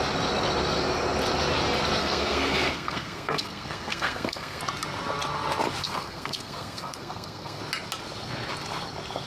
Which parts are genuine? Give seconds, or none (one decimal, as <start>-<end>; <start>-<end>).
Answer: 0.0-2.0; 4.6-5.8; 7.6-9.3